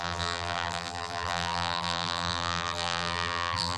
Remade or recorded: remade